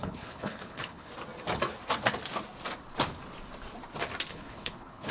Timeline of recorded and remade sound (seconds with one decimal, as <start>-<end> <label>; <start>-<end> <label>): 0.0-1.1 remade; 1.1-4.3 recorded; 4.3-5.1 remade